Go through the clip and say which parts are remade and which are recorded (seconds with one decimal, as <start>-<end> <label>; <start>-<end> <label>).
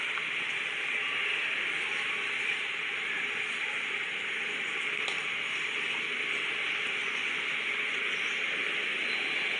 0.0-7.0 recorded; 7.0-8.0 remade; 8.0-9.6 recorded